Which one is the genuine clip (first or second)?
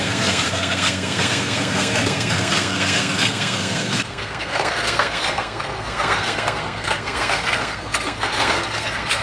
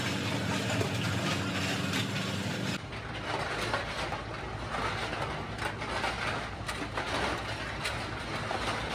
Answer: second